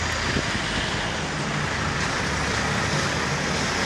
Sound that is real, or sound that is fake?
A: real